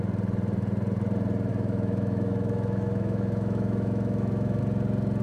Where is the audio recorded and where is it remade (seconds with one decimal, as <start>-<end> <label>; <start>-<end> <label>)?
0.0-1.5 recorded; 1.5-4.6 remade; 4.6-5.2 recorded